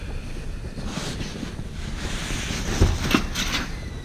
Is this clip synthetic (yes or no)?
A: no